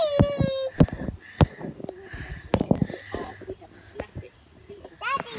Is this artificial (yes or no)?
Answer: no